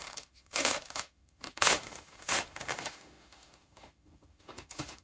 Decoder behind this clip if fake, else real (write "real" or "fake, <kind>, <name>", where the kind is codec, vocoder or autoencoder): fake, autoencoder, DAC-VAE